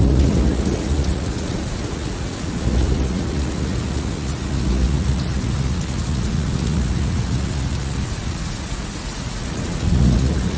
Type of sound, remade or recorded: remade